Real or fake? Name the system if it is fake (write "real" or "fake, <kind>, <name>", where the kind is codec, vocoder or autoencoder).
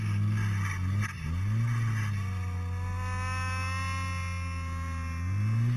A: real